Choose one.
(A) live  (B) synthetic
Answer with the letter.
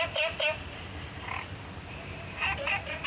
A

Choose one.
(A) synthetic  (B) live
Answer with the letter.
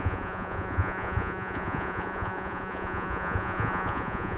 A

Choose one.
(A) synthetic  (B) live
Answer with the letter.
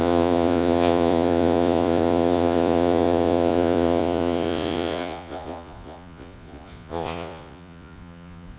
A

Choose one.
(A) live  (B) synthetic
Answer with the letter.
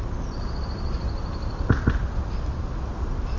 A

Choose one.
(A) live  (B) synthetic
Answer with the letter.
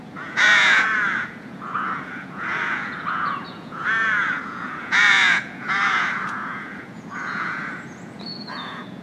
B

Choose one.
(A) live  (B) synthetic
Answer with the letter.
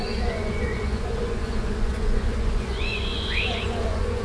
B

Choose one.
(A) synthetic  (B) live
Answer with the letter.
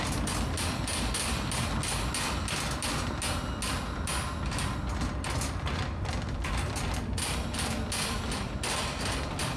B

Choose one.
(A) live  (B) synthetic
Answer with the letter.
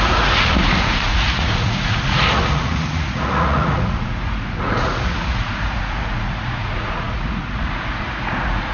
B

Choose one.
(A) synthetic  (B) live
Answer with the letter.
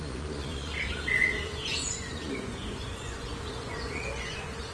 A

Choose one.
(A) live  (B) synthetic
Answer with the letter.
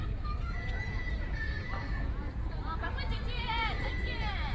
B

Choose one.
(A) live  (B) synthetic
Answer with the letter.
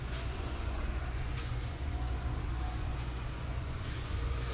B